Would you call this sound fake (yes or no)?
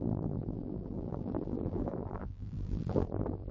yes